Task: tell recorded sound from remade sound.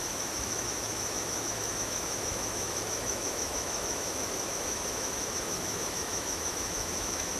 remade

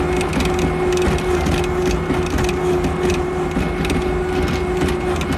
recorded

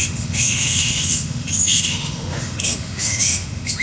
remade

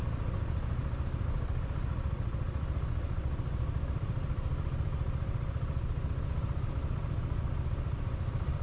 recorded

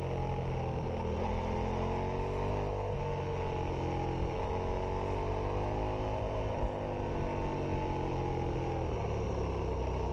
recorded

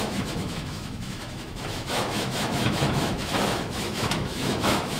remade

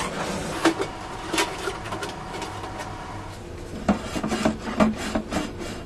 recorded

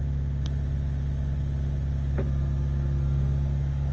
recorded